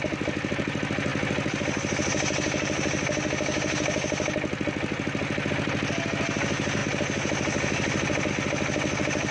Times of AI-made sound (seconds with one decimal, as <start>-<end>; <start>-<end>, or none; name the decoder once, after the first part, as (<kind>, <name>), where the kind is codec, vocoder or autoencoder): none